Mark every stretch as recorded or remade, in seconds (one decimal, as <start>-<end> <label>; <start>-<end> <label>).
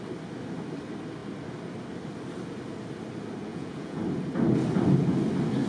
0.0-3.5 recorded; 3.5-4.0 remade; 4.0-5.7 recorded